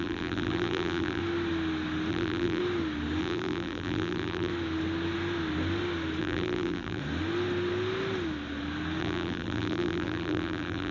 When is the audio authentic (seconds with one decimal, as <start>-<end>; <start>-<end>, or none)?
1.2-2.1; 2.6-3.2; 4.5-6.2; 7.0-9.0